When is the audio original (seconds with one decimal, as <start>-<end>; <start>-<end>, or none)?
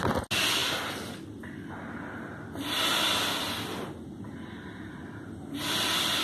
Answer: 0.0-6.2